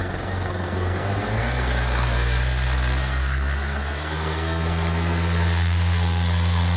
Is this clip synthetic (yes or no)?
yes